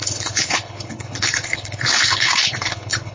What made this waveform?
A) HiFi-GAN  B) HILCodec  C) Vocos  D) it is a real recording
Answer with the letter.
B